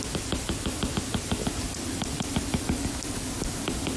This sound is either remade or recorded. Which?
remade